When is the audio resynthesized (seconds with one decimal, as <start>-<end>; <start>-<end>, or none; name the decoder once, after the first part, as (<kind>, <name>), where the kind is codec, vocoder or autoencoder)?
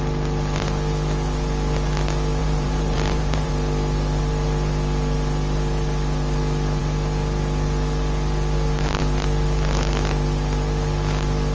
2.4-3.5 (vocoder, BigVGAN v2)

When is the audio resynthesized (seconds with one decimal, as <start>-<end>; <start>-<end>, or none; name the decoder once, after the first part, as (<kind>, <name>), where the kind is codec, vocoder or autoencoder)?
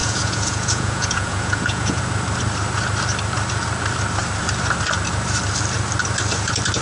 0.0-2.0 (vocoder, Vocos)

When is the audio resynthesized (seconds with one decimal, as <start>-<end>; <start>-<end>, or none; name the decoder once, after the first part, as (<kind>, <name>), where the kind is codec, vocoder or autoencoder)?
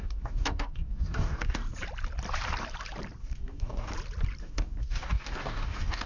0.0-1.6 (codec, DAC); 3.2-3.9; 4.4-6.1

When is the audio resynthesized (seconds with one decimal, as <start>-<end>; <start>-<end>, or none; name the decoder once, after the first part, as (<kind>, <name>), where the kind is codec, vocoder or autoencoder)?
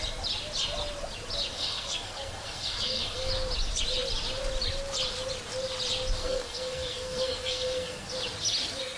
1.5-3.3 (codec, SNAC); 6.2-8.1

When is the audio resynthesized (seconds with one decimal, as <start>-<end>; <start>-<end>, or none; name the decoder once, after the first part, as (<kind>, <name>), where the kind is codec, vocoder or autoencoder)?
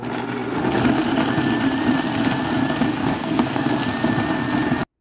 3.0-3.7 (codec, SNAC)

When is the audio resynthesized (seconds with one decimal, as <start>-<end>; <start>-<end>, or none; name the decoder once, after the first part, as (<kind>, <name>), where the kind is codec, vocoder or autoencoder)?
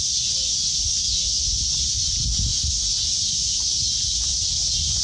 none